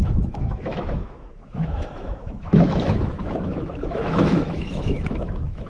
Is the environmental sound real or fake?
fake